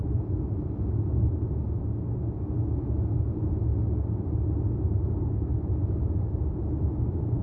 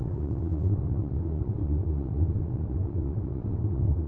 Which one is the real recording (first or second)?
first